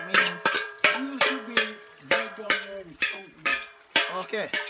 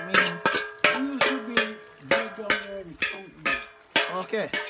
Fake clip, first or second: first